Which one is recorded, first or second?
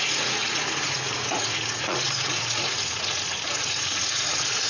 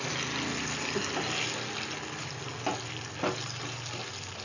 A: second